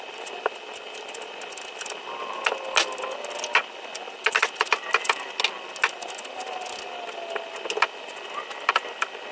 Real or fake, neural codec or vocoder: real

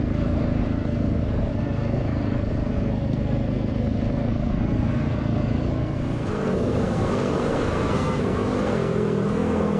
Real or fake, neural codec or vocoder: fake, codec, SNAC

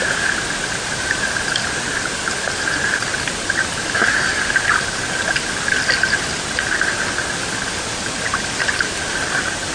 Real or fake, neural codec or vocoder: real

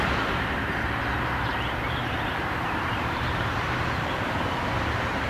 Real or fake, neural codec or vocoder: fake, vocoder, BigVGAN v2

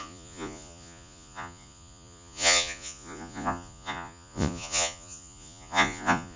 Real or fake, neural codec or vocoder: fake, vocoder, Vocos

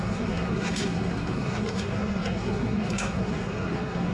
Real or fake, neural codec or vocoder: fake, codec, SNAC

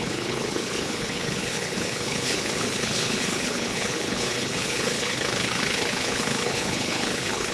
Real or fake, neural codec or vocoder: fake, codec, HILCodec